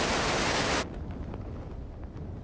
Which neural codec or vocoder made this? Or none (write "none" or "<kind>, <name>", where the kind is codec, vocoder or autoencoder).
none